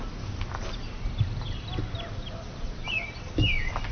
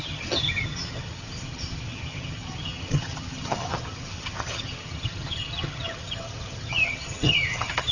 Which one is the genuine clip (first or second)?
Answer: first